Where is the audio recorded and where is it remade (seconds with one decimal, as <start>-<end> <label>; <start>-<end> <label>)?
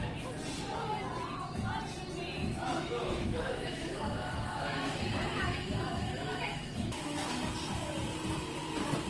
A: 0.0-2.4 recorded; 2.4-7.3 remade; 7.3-9.1 recorded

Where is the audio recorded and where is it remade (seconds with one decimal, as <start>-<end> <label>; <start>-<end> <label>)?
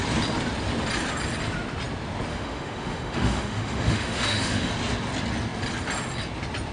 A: 0.0-2.3 recorded; 2.3-4.7 remade; 4.7-6.7 recorded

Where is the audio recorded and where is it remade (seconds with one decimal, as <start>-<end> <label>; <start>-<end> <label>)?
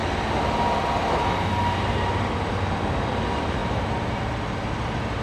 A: 0.0-5.2 recorded